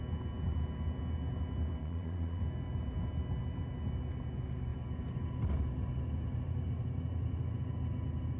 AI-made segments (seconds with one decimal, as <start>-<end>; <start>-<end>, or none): 1.8-2.4